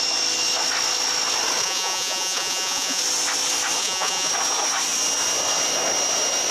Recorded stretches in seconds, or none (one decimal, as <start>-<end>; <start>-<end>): 0.0-1.6; 3.0-3.8; 4.3-6.5